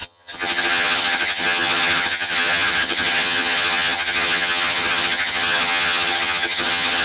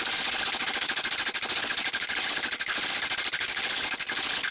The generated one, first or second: first